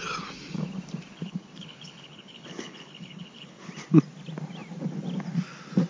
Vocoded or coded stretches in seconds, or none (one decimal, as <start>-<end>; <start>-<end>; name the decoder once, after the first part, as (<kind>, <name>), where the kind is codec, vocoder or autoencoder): 1.1-3.7 (codec, HILCodec)